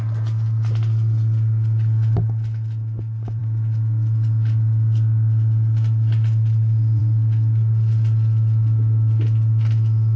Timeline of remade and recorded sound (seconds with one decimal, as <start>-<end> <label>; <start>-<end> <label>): 0.0-10.2 recorded